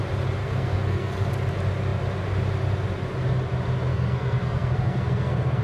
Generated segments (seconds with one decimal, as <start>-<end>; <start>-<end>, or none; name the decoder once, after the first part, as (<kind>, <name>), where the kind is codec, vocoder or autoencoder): 0.4-1.3 (codec, SNAC); 3.9-5.6